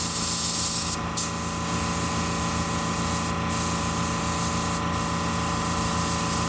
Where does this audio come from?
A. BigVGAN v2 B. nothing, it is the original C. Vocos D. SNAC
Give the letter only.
B